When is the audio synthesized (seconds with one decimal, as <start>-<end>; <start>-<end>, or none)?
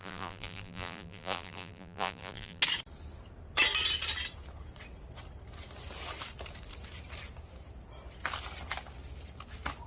0.0-2.6